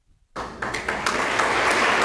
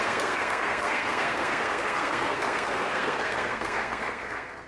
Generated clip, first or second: second